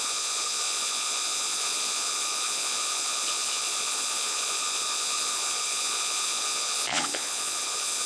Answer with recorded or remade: remade